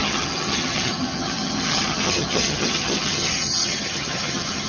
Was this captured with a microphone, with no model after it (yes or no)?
no